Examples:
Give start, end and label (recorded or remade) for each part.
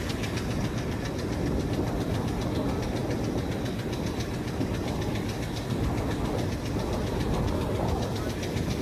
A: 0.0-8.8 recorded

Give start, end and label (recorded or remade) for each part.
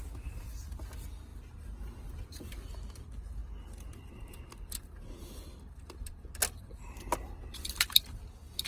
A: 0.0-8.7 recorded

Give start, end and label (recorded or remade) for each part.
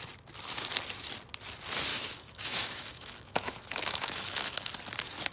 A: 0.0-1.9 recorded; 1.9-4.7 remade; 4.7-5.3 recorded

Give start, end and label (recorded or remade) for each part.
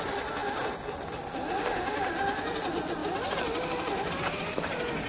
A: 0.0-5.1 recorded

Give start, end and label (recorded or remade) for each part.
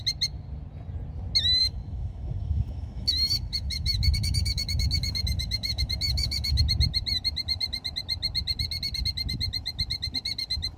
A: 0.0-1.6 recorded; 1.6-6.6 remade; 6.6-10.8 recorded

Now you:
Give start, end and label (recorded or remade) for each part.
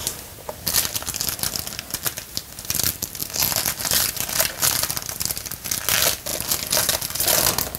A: 0.0-7.8 recorded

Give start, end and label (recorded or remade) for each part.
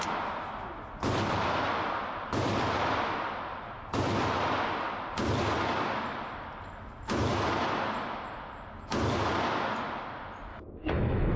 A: 0.0-10.5 recorded; 10.5-11.4 remade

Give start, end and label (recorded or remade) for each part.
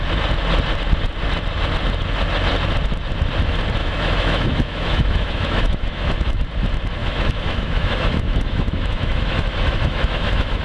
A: 0.0-3.8 recorded; 3.8-6.4 remade; 6.4-7.0 recorded; 7.0-10.6 remade